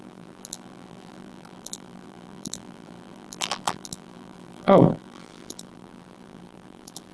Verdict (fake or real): fake